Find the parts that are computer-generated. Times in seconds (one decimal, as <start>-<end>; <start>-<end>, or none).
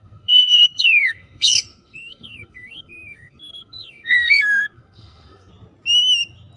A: 0.0-5.5